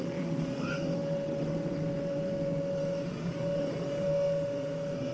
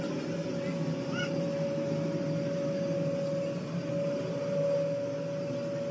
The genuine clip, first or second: second